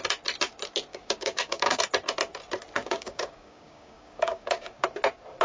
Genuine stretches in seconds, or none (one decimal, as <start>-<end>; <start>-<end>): 0.0-0.9; 1.8-2.8; 4.8-5.4